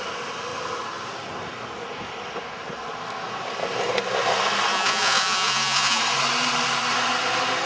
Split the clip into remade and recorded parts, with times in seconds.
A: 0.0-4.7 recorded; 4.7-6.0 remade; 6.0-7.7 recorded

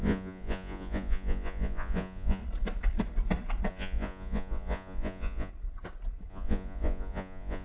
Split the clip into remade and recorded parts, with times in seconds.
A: 0.0-2.4 remade; 2.4-3.7 recorded; 3.7-5.5 remade; 5.5-6.3 recorded; 6.3-7.6 remade